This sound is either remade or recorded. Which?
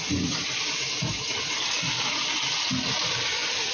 recorded